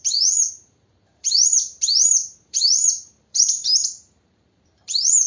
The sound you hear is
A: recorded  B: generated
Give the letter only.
B